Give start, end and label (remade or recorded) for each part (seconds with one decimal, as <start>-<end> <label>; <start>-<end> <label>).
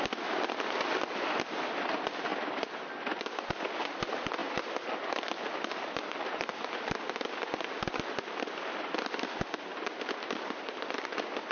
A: 0.0-11.5 recorded